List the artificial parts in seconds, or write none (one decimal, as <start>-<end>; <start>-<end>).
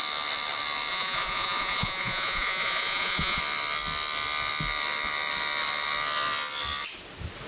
0.9-3.4